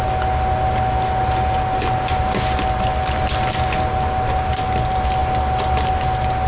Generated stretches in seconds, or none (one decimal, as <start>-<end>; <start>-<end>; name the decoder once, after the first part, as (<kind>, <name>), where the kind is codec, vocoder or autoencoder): none